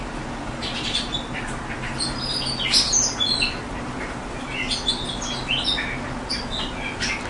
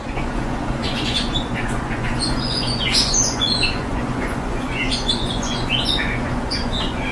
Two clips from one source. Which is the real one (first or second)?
first